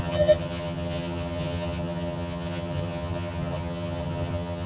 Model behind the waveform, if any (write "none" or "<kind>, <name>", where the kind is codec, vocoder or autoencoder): vocoder, HiFi-GAN